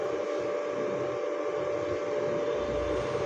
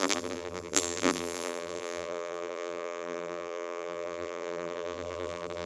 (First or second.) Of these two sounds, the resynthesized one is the second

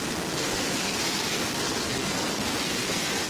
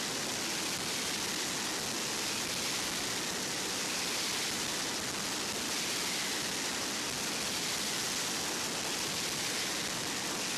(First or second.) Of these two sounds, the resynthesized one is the first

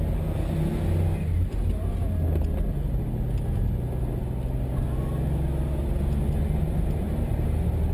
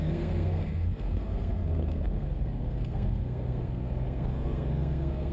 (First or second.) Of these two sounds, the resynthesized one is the second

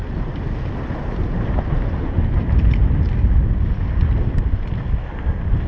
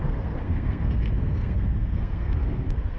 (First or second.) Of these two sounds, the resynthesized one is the second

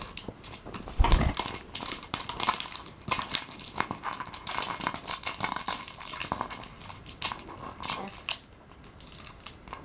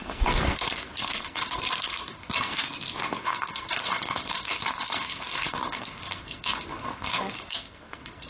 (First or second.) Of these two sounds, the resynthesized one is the second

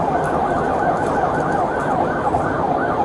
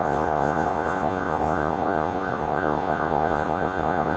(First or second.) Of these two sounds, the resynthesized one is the second